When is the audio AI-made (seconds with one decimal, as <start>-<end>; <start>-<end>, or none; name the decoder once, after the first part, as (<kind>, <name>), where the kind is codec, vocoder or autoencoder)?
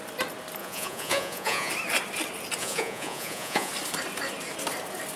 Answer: 0.6-1.7 (vocoder, Vocos); 2.6-3.7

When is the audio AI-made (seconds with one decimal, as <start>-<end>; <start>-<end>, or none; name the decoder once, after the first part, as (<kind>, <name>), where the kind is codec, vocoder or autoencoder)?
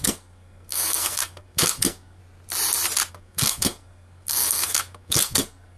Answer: 0.0-2.2 (codec, SNAC); 3.1-5.8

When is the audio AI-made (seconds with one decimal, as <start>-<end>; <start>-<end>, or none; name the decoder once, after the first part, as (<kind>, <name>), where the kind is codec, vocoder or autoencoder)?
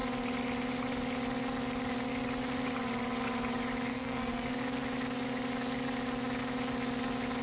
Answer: 3.9-4.5 (codec, SNAC)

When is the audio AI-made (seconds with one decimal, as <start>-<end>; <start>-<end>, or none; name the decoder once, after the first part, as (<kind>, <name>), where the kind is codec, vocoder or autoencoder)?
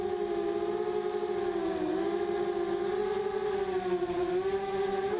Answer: none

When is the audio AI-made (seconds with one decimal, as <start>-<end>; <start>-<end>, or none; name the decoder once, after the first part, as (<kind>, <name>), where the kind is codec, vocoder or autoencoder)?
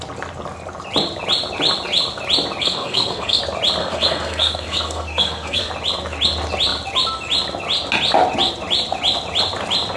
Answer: 2.6-3.4 (codec, SNAC); 3.8-5.7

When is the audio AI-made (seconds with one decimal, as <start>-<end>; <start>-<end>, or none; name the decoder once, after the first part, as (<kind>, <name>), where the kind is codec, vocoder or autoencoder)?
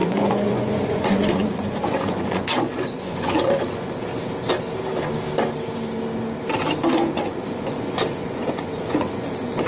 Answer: 0.0-4.1 (vocoder, Vocos); 7.3-9.7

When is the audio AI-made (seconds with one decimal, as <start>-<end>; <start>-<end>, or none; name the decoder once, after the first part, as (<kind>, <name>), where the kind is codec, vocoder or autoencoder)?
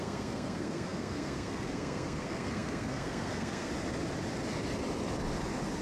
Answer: 0.0-3.7 (codec, SNAC)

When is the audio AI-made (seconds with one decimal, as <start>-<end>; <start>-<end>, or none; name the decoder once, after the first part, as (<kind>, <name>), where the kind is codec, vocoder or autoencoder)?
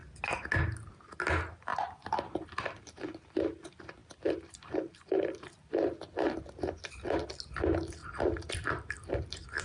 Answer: 1.7-3.4 (vocoder, BigVGAN v2); 4.0-6.4; 8.0-9.1